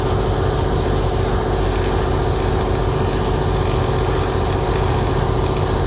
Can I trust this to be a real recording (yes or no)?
yes